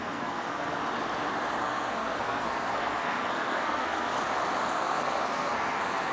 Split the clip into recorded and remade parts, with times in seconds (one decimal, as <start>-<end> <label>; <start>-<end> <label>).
0.0-0.8 remade; 0.8-1.6 recorded; 1.6-4.1 remade; 4.1-4.7 recorded; 4.7-6.1 remade